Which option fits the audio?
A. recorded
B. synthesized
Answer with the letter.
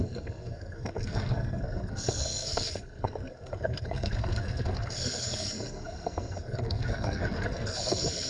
B